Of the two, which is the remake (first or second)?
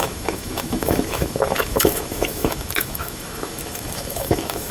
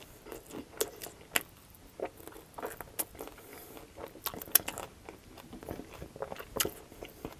first